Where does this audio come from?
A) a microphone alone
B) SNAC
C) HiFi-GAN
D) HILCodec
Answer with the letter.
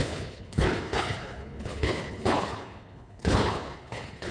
D